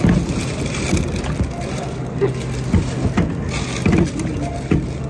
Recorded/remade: recorded